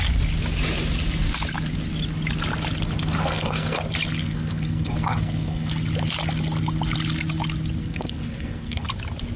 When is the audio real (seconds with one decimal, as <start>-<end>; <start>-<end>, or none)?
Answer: 0.0-3.2; 3.8-4.2; 5.7-7.8; 8.9-9.4